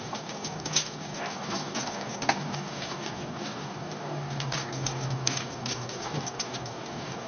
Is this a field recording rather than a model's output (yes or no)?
no